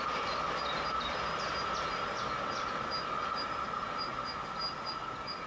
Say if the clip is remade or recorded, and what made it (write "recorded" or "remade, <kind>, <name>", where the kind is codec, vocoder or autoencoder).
recorded